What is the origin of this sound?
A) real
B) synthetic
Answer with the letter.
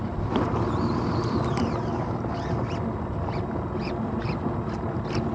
A